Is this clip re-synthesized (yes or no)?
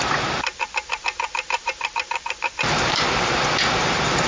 yes